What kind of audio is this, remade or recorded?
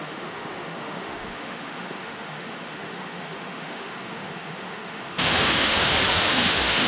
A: remade